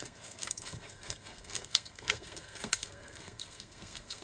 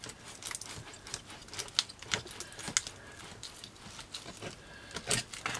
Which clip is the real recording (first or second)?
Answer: second